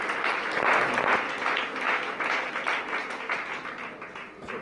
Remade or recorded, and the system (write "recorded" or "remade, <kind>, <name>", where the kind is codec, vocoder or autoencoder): recorded